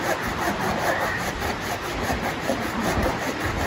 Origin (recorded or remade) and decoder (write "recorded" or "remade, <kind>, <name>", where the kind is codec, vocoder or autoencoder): recorded